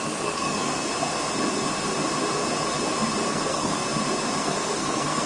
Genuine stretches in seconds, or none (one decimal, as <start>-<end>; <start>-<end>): 0.9-3.3; 3.8-4.4